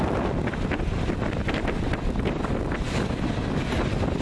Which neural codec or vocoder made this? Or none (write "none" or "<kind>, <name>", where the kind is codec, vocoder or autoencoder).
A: none